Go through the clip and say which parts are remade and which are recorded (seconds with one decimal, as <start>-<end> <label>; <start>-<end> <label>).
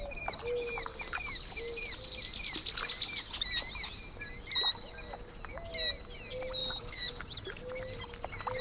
0.0-6.6 recorded; 6.6-7.2 remade; 7.2-8.6 recorded